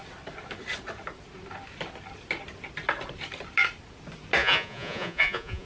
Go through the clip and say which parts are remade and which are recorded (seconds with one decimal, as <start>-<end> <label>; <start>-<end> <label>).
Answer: 0.0-4.4 recorded; 4.4-5.7 remade